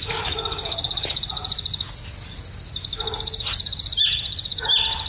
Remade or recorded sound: recorded